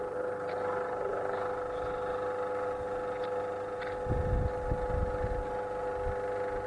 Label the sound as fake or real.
real